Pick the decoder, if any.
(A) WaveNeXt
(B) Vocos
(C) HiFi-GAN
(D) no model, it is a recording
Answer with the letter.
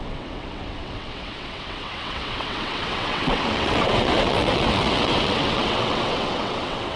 A